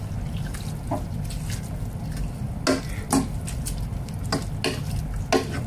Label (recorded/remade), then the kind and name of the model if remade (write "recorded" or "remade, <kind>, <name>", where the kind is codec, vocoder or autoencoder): recorded